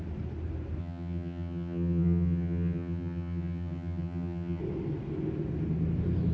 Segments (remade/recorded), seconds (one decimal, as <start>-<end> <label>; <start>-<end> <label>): 0.0-0.8 recorded; 0.8-4.6 remade; 4.6-6.3 recorded